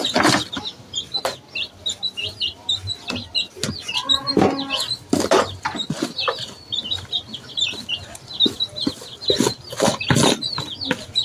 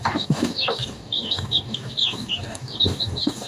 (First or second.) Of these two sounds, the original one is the first